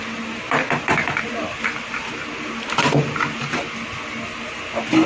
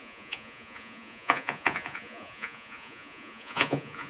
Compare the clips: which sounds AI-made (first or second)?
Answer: second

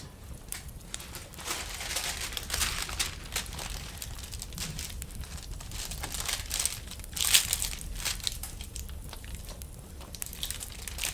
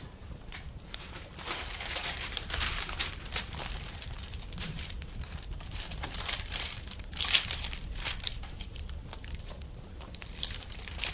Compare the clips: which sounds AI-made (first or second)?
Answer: second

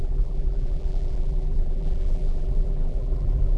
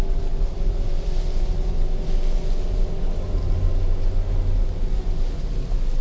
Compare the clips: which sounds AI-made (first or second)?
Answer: first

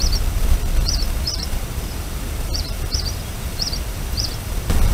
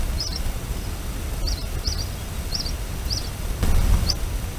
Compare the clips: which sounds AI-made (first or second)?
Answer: first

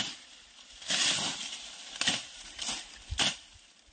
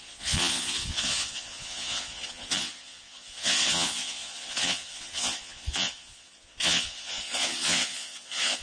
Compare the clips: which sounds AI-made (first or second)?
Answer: second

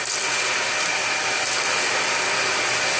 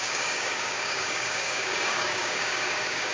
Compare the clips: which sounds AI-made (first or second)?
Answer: second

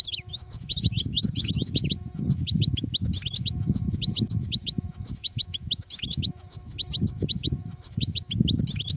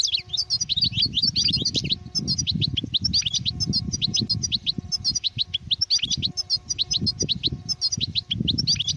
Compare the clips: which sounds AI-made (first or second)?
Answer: first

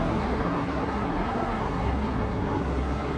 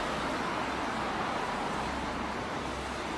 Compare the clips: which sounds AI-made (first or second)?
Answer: first